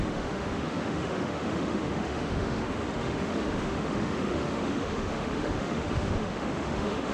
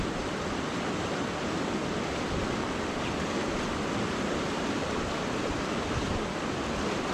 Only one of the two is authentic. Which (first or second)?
second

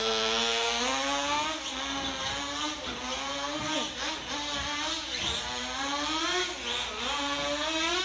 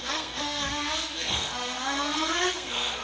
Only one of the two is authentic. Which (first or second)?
first